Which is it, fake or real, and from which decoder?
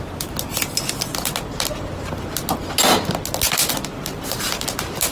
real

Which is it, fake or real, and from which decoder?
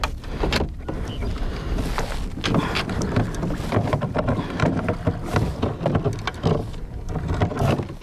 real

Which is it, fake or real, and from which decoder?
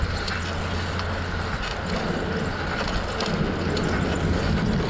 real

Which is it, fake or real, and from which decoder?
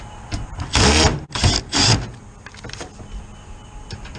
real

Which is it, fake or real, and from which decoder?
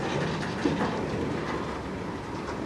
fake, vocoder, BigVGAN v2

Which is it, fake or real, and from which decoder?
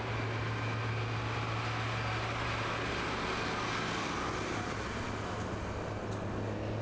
real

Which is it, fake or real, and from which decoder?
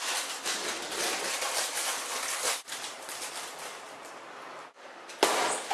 fake, vocoder, BigVGAN v2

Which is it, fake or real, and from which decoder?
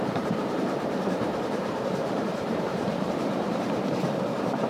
fake, vocoder, BigVGAN v2